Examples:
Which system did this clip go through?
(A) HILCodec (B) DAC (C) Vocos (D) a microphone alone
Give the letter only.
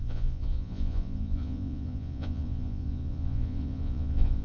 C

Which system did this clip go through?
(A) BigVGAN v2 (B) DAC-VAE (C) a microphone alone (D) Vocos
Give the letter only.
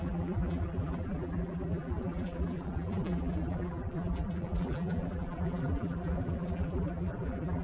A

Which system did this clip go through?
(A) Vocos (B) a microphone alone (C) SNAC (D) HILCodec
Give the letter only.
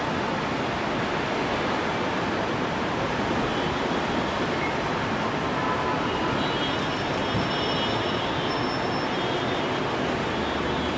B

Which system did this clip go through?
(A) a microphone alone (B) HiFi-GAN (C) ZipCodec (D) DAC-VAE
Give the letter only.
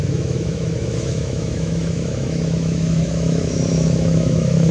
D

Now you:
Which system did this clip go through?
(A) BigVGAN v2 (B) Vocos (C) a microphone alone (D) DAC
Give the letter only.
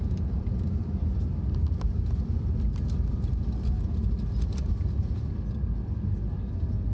C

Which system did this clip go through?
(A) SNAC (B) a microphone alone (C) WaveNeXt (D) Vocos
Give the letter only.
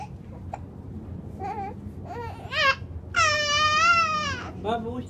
B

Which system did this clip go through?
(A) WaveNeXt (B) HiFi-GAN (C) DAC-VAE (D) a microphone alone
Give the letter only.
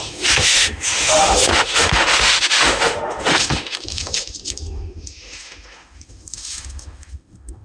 C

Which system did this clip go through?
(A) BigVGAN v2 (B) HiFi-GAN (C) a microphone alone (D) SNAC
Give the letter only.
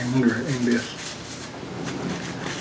C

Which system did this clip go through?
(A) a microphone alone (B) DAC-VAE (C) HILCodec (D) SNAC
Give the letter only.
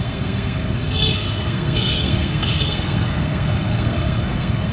D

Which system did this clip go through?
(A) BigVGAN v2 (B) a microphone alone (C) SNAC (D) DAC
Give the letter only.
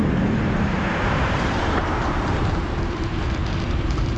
A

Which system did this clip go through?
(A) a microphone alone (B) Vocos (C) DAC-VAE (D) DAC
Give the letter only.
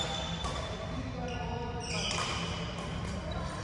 A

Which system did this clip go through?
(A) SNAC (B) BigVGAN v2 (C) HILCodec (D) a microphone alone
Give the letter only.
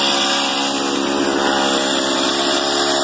D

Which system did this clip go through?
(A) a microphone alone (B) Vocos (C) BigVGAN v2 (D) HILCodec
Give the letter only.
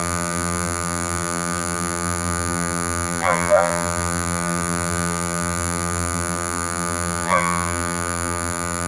C